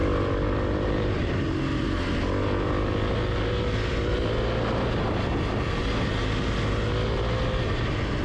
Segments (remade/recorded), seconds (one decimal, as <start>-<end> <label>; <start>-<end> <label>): 0.0-8.2 recorded